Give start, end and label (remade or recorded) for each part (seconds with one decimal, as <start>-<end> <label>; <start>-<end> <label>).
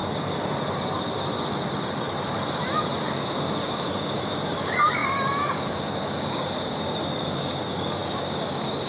0.0-3.0 recorded; 3.0-8.9 remade